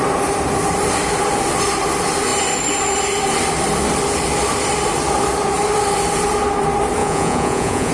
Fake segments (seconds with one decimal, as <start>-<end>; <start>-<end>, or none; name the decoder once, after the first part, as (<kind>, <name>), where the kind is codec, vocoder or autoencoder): 7.0-7.9 (vocoder, Vocos)